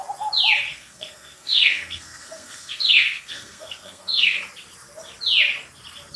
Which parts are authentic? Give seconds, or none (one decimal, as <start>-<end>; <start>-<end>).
0.0-0.7; 4.4-6.2